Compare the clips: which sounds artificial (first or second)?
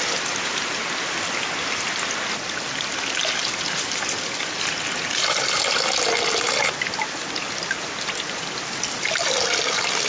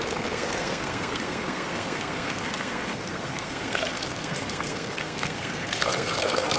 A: second